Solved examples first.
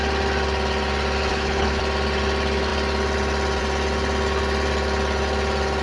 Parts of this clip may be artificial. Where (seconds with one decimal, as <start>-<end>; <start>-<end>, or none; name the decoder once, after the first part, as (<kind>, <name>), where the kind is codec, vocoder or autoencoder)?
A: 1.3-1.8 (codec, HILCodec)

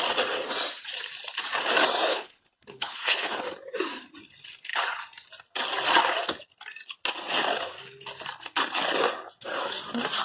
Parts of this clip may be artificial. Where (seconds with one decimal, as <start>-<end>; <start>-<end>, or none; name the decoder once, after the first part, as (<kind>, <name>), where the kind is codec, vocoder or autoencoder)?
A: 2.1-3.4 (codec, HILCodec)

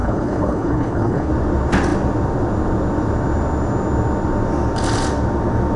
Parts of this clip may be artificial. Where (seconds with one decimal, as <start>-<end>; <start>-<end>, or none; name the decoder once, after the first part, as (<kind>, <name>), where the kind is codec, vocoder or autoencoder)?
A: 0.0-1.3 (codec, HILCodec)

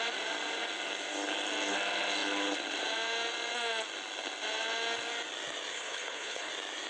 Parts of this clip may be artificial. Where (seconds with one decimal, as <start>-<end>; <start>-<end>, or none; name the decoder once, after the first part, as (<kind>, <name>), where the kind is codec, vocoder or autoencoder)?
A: 5.7-6.5 (codec, HILCodec)